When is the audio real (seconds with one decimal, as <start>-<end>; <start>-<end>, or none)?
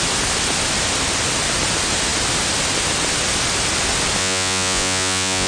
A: 0.0-4.2